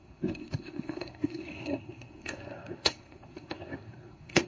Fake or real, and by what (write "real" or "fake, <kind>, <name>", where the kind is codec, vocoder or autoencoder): fake, codec, SNAC